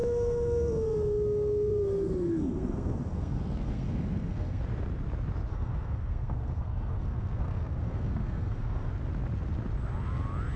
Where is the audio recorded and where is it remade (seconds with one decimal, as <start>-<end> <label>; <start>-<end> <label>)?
0.0-4.6 remade; 4.6-5.5 recorded; 5.5-8.9 remade; 8.9-10.6 recorded